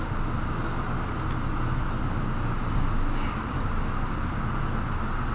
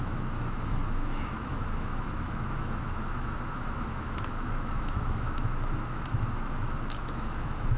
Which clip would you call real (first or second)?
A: first